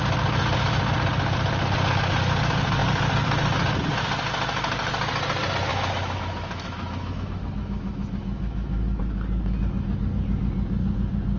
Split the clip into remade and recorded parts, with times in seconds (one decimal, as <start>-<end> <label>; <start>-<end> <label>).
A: 0.0-5.7 recorded; 5.7-9.0 remade; 9.0-11.4 recorded